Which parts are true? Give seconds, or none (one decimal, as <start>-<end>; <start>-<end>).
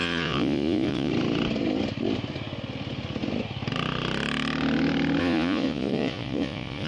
1.1-5.2